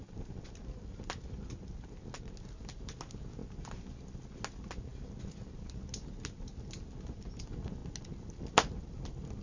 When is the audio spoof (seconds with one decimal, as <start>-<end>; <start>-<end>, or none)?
none